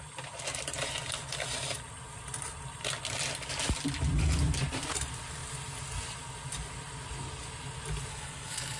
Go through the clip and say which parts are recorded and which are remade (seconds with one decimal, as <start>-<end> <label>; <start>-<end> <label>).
0.0-8.1 recorded; 8.1-8.8 remade